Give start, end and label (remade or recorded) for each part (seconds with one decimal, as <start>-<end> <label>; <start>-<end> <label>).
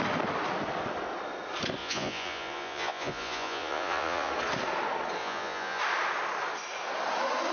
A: 0.0-1.8 recorded; 1.8-4.3 remade; 4.3-5.2 recorded; 5.2-5.8 remade; 5.8-7.5 recorded